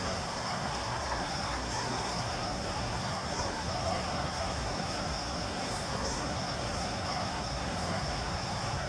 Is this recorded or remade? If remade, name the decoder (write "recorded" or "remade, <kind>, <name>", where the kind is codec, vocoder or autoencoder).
remade, codec, SNAC